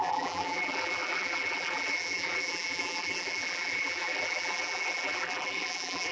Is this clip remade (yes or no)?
yes